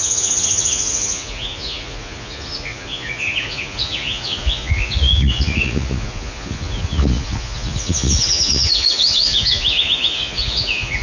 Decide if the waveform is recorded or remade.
remade